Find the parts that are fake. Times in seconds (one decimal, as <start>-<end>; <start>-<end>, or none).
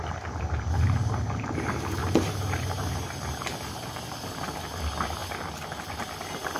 2.0-3.1